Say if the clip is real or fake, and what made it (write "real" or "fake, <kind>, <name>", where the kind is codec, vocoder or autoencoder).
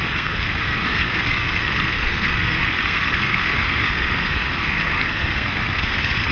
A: fake, codec, SNAC